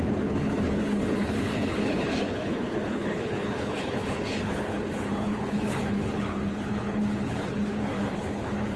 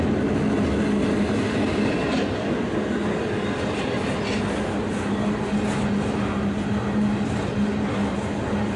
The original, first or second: second